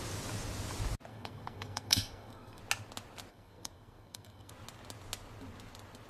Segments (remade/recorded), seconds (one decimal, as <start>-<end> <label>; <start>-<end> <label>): 0.0-1.1 recorded; 1.1-2.6 remade; 2.6-3.3 recorded; 3.3-4.5 remade; 4.5-6.1 recorded